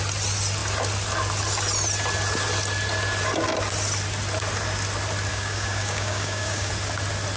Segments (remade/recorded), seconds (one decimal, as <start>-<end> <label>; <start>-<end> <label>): 0.0-5.3 recorded; 5.3-6.7 remade; 6.7-7.4 recorded